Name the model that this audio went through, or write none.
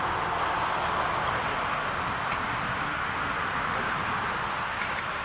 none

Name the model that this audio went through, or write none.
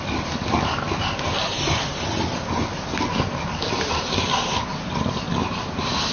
none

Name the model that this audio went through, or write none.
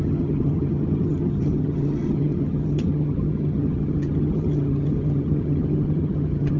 vocoder, HiFi-GAN